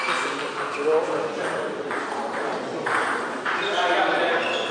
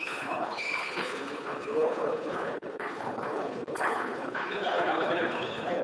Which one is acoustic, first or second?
first